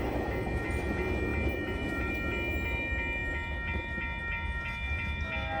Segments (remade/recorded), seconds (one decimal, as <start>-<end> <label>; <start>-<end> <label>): 0.0-1.3 recorded; 1.3-2.1 remade; 2.1-5.6 recorded